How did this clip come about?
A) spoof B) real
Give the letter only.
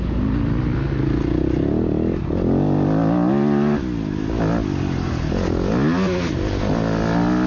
B